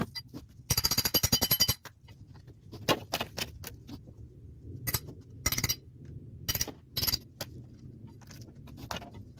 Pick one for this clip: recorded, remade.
recorded